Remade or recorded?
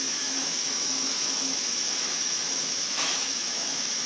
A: remade